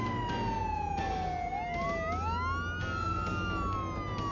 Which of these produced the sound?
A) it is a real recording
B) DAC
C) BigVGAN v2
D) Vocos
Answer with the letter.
A